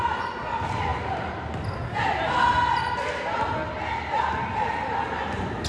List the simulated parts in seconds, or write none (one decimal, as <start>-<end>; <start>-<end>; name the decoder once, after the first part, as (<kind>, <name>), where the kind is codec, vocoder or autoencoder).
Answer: none